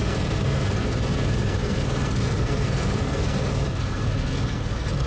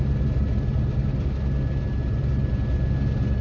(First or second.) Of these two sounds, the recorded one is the second